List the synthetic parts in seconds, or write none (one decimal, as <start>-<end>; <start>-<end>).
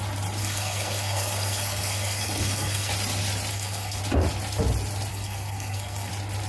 0.4-2.9; 3.5-4.0; 5.1-6.1